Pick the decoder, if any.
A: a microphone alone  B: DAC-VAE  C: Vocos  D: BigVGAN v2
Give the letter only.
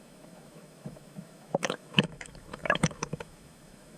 B